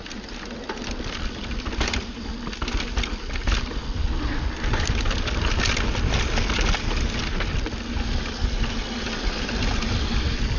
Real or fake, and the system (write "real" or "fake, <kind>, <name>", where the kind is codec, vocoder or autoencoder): real